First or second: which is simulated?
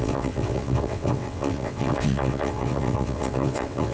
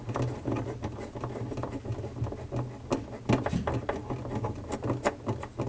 first